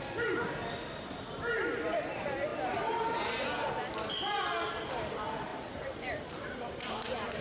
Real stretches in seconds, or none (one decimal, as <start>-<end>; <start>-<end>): 0.0-5.5; 6.9-7.4

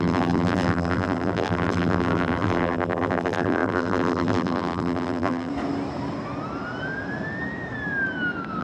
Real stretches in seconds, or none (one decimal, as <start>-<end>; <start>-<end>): 5.5-8.6

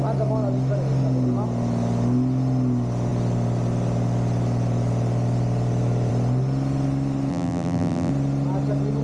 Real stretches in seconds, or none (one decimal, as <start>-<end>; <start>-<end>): 0.0-7.3; 8.1-9.0

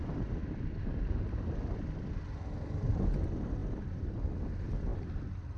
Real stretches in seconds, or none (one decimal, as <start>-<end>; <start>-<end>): 0.0-3.6; 4.1-4.9

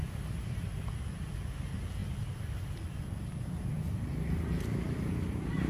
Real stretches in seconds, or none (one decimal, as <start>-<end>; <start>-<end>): 0.9-2.0; 3.0-5.7

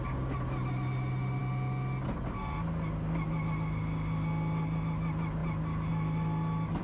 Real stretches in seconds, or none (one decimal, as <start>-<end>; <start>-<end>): 0.0-6.8

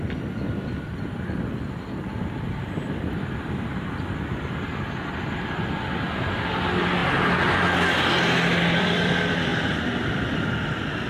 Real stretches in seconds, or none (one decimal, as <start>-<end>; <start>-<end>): 7.0-8.8; 9.5-10.2

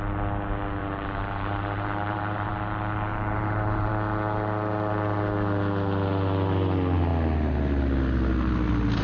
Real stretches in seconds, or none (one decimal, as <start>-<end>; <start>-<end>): 0.0-0.8; 2.5-3.1; 3.9-9.0